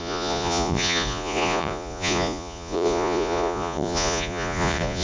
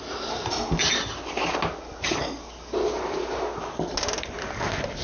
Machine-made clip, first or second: first